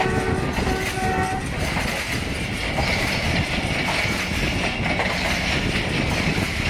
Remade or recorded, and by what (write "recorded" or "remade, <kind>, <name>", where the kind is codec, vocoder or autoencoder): recorded